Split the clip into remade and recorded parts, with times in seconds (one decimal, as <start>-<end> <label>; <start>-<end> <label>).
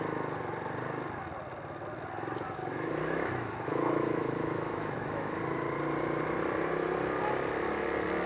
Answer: 0.0-2.6 recorded; 2.6-5.4 remade; 5.4-8.3 recorded